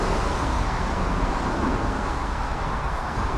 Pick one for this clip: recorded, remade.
remade